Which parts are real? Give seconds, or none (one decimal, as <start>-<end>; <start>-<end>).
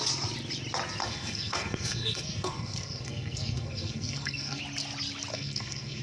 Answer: 0.0-1.0; 4.6-5.3